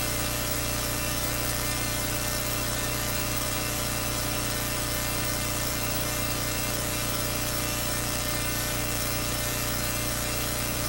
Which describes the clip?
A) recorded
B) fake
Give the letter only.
B